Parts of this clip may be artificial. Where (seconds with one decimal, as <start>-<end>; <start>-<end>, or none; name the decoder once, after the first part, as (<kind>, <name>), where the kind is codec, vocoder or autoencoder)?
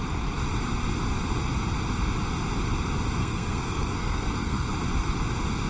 3.2-4.7 (codec, SNAC)